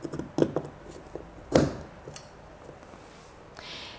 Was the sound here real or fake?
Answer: real